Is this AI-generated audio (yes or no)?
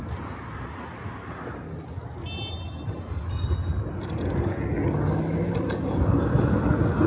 no